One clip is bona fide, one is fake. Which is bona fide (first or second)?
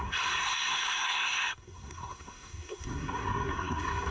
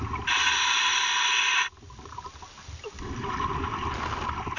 second